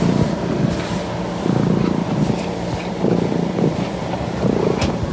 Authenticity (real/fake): real